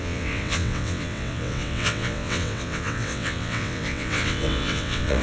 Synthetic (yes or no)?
yes